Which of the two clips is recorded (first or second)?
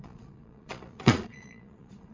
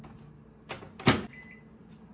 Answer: second